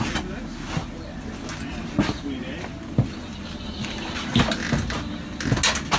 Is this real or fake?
real